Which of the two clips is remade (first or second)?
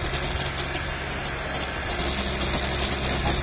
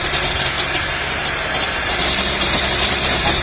second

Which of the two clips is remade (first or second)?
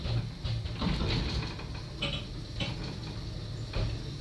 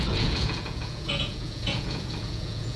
second